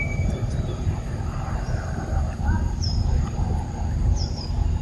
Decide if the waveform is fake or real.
fake